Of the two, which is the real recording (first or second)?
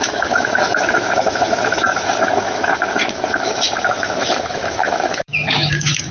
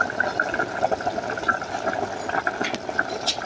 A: second